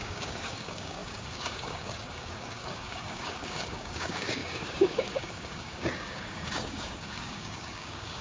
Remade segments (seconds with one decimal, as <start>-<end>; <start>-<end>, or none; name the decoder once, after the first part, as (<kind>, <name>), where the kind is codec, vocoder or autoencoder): 0.0-8.2 (codec, DAC)